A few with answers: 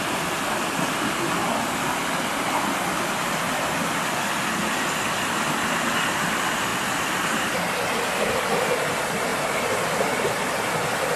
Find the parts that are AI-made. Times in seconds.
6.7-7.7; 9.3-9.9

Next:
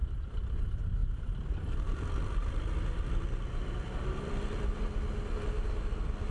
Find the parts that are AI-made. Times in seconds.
1.0-4.8

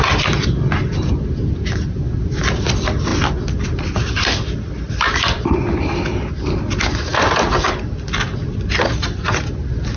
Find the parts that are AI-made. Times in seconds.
3.1-6.0